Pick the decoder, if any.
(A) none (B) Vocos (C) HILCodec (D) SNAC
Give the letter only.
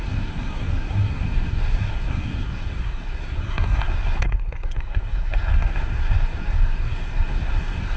D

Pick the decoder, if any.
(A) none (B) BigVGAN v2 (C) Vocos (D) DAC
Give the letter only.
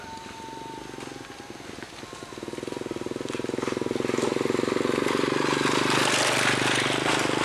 A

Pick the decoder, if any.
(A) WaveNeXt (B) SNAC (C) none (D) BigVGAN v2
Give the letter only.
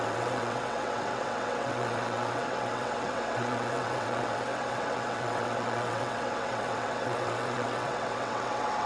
A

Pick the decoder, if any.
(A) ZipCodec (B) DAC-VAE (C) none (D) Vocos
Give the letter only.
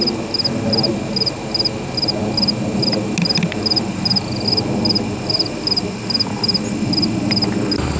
C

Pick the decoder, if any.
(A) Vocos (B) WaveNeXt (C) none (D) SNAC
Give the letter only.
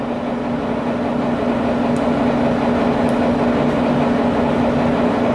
C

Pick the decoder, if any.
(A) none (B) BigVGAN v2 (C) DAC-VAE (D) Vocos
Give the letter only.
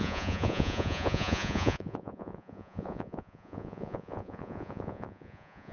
D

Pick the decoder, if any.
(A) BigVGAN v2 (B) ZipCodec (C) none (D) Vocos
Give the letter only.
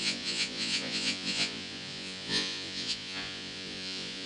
D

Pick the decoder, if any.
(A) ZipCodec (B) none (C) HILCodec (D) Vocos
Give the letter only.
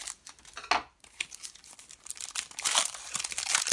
B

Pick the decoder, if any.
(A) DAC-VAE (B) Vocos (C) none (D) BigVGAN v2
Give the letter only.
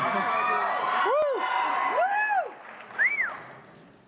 C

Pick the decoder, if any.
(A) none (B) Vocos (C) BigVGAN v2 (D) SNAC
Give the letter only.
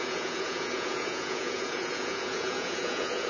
B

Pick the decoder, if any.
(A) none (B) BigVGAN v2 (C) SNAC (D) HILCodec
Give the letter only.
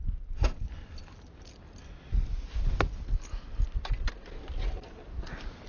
A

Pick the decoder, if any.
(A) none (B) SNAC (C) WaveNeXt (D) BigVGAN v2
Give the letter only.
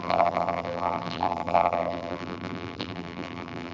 D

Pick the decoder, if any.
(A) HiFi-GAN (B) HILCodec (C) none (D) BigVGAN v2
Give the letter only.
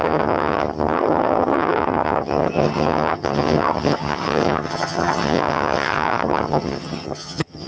A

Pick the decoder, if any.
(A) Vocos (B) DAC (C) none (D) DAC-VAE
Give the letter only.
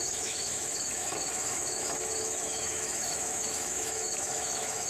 D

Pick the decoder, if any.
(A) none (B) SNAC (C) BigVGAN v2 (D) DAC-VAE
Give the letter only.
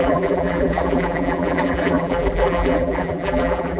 C